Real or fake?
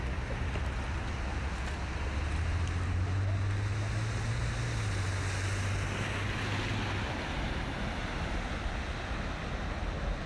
real